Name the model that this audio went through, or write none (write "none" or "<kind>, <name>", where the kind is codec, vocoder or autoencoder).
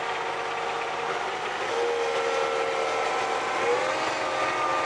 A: none